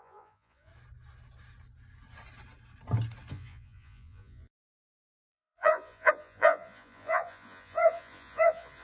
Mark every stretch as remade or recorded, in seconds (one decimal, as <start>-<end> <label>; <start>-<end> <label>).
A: 0.0-0.7 remade; 0.7-3.3 recorded; 3.3-8.8 remade